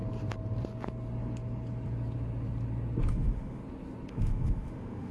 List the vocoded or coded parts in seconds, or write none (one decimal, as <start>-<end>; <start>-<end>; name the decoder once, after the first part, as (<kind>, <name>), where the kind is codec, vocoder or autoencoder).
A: 3.1-3.6 (autoencoder, DAC-VAE); 4.1-5.1